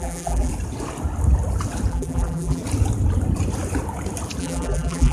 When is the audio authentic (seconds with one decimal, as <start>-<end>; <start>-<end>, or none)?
0.5-1.9; 2.6-4.4